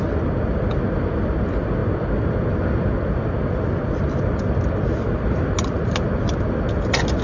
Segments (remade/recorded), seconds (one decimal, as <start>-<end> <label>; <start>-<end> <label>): 0.0-7.2 recorded